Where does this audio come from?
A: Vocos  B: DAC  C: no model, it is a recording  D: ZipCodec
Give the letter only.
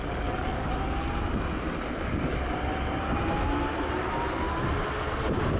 C